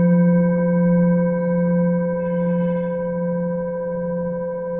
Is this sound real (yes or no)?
yes